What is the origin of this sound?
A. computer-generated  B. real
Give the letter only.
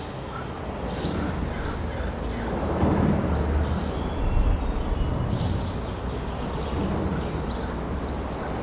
B